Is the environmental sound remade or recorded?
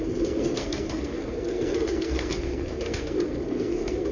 remade